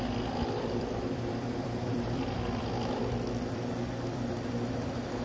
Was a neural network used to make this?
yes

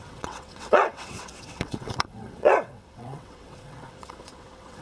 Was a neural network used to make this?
yes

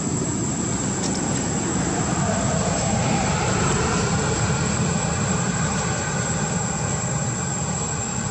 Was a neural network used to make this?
yes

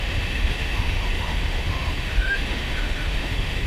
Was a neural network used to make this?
yes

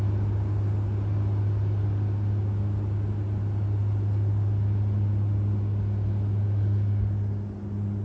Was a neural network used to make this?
no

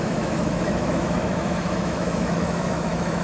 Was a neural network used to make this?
yes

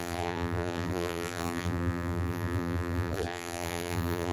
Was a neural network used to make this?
yes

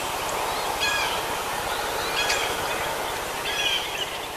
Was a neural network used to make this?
no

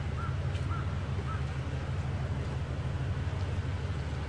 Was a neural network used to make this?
no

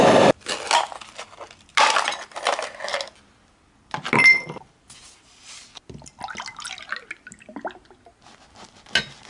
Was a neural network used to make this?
no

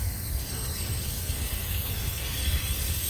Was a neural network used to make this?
yes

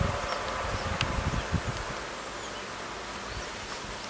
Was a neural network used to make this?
no